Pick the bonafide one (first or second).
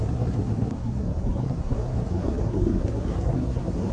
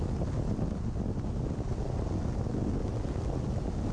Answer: second